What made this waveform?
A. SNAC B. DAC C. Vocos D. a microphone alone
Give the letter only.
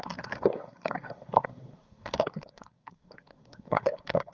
A